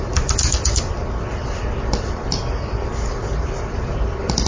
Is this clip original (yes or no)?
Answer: yes